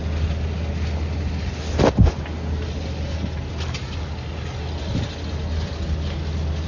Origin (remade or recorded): recorded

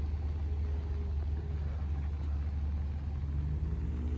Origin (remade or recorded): recorded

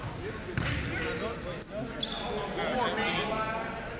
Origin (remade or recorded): recorded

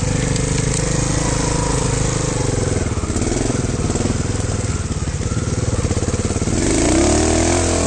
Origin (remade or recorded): recorded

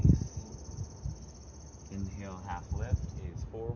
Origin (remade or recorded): recorded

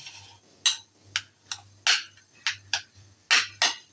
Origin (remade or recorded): recorded